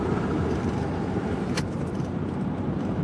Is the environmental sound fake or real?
fake